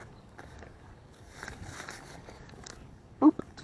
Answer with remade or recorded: remade